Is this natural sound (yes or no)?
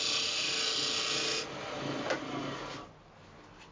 yes